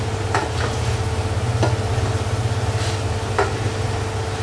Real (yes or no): yes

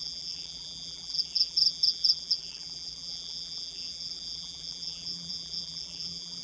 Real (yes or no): no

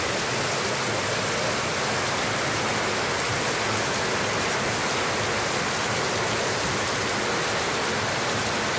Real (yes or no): yes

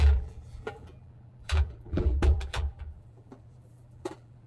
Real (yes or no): no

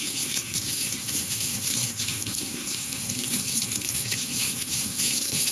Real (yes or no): no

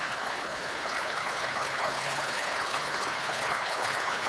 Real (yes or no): no